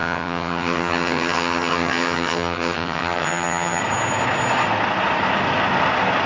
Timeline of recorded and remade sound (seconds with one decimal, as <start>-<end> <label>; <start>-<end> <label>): 0.0-3.8 remade; 3.8-6.3 recorded